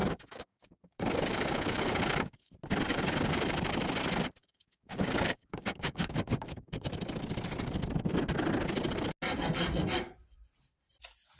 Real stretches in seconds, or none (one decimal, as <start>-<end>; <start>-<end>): 2.5-2.9; 3.8-4.4; 6.9-11.4